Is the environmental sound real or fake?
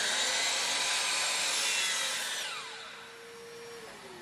real